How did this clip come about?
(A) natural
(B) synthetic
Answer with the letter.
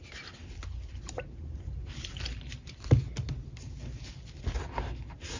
A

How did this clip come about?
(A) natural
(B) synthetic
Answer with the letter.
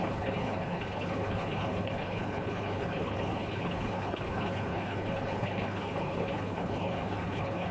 B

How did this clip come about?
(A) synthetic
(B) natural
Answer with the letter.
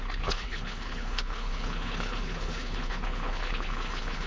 A